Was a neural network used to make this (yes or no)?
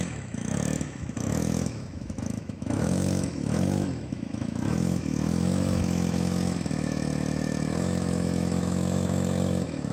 yes